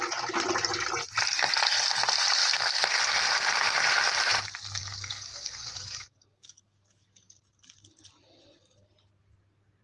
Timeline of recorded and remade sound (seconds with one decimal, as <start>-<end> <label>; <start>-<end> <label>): 0.0-4.8 recorded; 4.8-7.4 remade; 7.4-9.8 recorded